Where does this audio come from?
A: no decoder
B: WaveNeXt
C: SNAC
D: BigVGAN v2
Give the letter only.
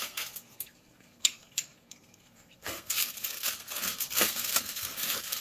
C